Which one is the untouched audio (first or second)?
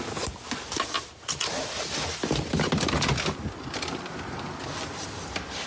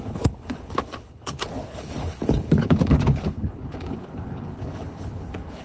first